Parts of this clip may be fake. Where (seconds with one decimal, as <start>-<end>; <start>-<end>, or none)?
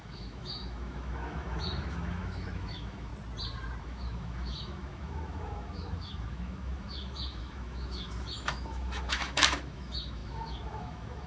0.0-3.1; 3.8-11.3